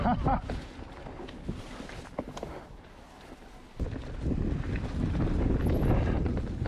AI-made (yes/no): no